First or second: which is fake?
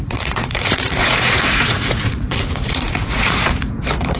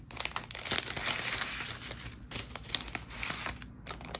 first